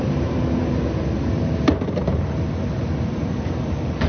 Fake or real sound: real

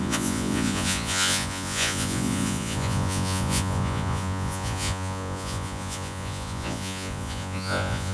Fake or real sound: fake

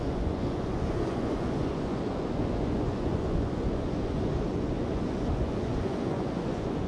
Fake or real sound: fake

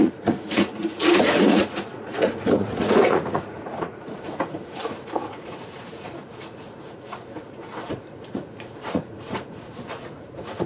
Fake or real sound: fake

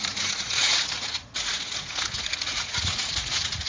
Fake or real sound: fake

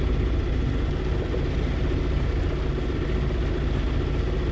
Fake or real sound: real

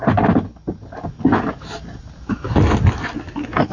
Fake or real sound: real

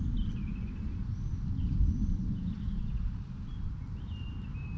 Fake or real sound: real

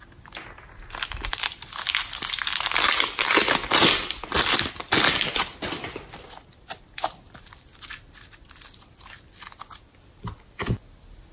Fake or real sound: real